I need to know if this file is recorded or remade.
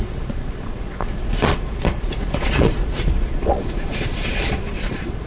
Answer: remade